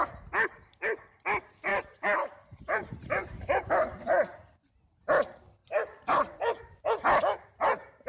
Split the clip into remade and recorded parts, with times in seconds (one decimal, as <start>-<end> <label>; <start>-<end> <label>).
0.0-1.7 recorded; 1.7-4.7 remade; 4.7-5.6 recorded; 5.6-6.6 remade; 6.6-8.1 recorded